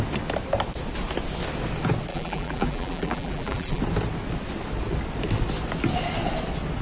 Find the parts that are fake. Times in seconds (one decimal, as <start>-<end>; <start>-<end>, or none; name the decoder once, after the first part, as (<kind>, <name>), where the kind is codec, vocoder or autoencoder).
2.1-3.8 (vocoder, BigVGAN v2)